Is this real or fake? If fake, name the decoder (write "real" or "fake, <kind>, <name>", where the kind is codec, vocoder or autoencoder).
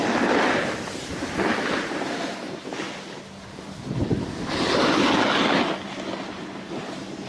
real